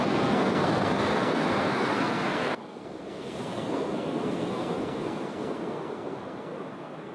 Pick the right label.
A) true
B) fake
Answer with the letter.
B